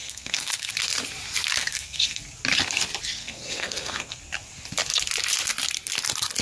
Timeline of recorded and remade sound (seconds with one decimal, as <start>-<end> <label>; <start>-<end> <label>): 0.0-0.7 remade; 0.7-1.6 recorded; 1.6-2.2 remade; 2.2-3.2 recorded; 3.2-4.2 remade; 4.2-6.4 recorded